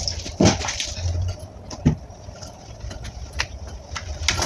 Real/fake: real